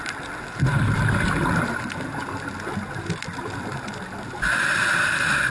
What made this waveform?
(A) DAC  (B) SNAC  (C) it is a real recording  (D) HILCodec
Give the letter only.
C